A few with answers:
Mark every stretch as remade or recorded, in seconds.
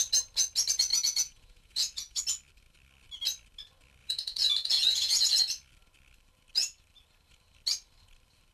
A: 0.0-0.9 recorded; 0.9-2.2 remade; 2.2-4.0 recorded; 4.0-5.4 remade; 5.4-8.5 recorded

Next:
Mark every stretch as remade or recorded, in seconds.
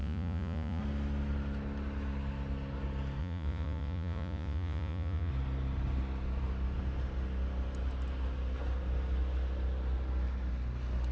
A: 0.0-0.8 remade; 0.8-3.2 recorded; 3.2-5.3 remade; 5.3-11.1 recorded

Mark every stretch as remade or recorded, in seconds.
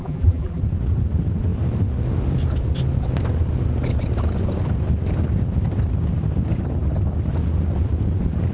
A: 0.0-0.6 remade; 0.6-8.5 recorded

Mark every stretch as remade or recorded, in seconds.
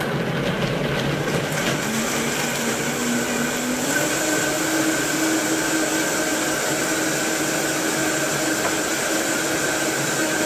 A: 0.0-3.0 recorded; 3.0-4.4 remade; 4.4-10.5 recorded